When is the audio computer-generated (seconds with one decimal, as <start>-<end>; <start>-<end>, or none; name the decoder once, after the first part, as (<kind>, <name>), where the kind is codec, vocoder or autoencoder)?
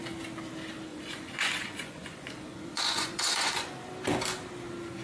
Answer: 0.9-3.9 (vocoder, Vocos)